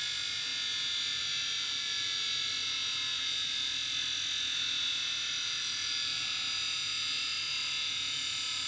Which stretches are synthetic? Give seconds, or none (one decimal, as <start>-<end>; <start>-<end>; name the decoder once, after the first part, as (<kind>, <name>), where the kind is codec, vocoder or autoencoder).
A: none